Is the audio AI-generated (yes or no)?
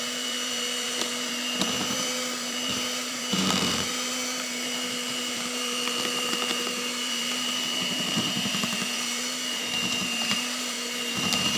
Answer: yes